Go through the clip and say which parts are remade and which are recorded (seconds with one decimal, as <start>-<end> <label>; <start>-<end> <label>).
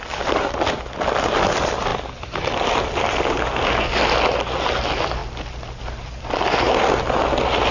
0.0-7.7 recorded